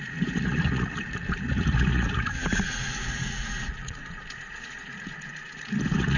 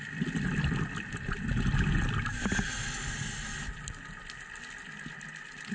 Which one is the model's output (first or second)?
first